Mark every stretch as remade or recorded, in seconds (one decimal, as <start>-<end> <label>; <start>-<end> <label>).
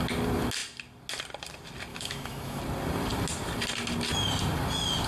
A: 0.0-1.9 recorded; 1.9-2.6 remade; 2.6-5.1 recorded